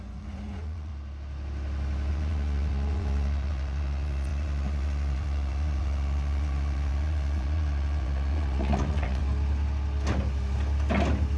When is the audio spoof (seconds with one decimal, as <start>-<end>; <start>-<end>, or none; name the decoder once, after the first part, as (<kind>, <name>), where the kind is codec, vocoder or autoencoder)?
0.0-0.9 (vocoder, Vocos); 2.1-9.2